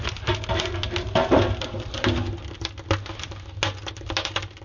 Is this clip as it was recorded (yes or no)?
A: yes